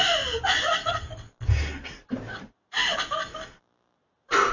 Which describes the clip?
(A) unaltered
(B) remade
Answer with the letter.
A